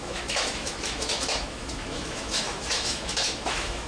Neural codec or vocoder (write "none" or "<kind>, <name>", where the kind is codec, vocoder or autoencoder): autoencoder, DAC-VAE